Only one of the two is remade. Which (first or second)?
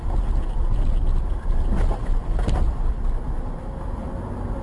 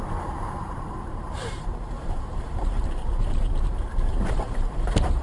second